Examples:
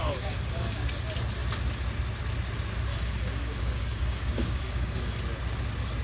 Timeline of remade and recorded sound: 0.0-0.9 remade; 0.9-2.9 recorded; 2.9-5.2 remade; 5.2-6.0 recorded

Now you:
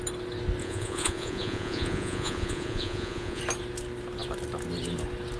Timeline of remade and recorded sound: 0.0-0.6 recorded; 0.6-3.4 remade; 3.4-5.4 recorded

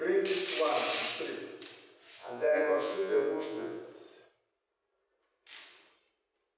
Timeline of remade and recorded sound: 0.0-2.2 recorded; 2.2-3.8 remade; 3.8-6.6 recorded

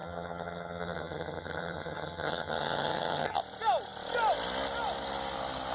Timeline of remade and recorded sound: 0.0-3.4 remade; 3.4-5.7 recorded

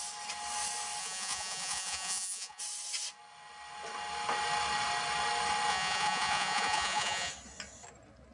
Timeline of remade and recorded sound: 0.0-1.0 recorded; 1.0-2.6 remade; 2.6-5.7 recorded; 5.7-7.3 remade; 7.3-8.3 recorded